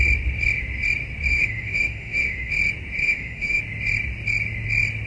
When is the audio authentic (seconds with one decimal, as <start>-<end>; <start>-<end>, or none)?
0.0-1.3; 2.5-3.0; 3.6-5.1